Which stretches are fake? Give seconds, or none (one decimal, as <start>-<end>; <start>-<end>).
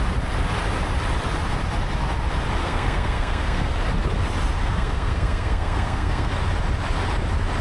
2.6-3.7; 4.6-6.3